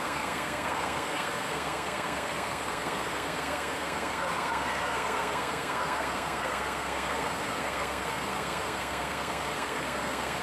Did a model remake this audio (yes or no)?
yes